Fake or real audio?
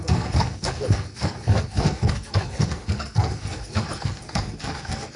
fake